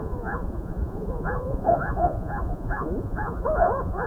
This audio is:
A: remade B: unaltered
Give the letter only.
A